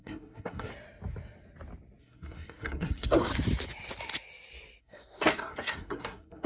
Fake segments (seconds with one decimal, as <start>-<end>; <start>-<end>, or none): 0.0-0.7; 2.0-3.3; 4.8-6.5